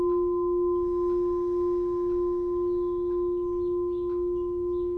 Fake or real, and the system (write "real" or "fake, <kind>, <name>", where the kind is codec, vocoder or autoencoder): real